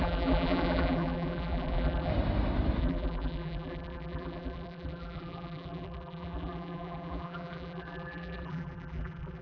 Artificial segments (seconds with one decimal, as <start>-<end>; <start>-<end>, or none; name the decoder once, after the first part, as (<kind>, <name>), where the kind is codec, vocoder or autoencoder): 0.0-2.1 (vocoder, BigVGAN v2); 2.8-9.4